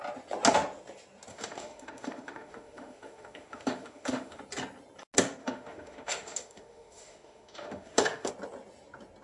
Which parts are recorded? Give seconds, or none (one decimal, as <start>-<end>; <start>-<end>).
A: 0.0-1.3; 4.4-5.4; 8.3-9.2